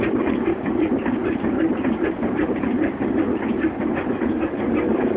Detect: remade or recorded recorded